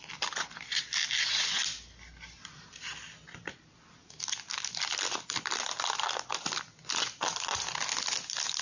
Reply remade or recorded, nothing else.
recorded